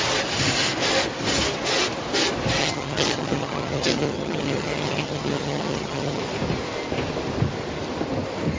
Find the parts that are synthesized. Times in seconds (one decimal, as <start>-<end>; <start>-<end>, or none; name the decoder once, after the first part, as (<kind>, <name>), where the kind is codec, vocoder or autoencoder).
2.6-6.2 (vocoder, HiFi-GAN)